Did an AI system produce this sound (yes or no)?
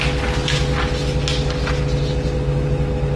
no